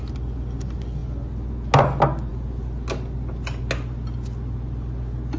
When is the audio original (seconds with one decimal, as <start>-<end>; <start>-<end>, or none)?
0.0-5.4